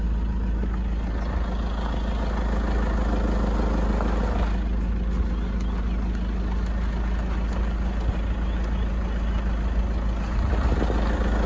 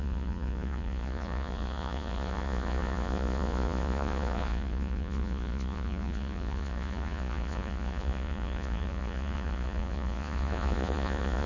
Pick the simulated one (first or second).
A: second